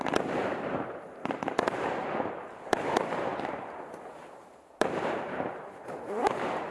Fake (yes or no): yes